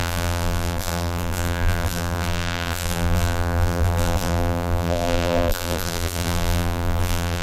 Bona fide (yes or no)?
no